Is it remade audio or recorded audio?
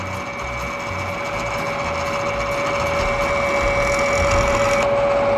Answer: recorded